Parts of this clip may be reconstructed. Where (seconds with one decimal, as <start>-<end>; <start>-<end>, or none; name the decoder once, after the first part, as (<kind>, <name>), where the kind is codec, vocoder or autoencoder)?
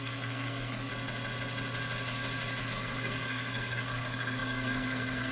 0.0-0.9 (codec, SNAC); 2.6-5.3